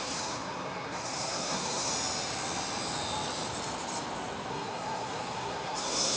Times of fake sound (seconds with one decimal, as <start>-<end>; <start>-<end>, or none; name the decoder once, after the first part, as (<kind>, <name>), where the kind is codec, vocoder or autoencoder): 0.0-1.9 (codec, SNAC); 4.5-6.2